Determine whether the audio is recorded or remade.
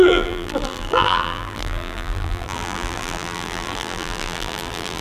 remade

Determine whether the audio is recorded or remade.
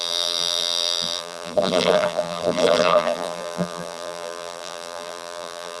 remade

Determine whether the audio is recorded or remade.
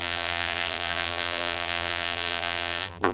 remade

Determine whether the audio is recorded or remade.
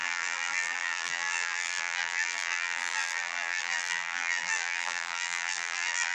remade